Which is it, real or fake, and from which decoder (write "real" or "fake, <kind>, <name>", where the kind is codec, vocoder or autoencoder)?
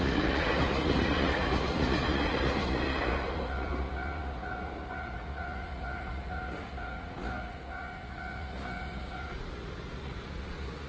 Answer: fake, vocoder, Vocos